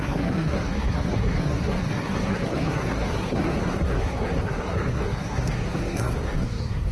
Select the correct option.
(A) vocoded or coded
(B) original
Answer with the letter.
A